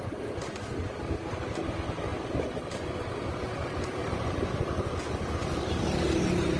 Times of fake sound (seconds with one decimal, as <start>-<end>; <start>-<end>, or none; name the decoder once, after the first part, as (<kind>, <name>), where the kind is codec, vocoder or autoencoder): 4.0-5.8 (vocoder, BigVGAN v2)